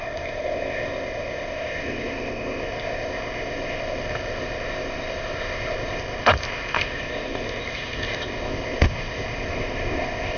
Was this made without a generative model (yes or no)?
no